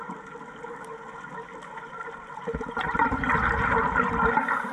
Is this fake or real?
real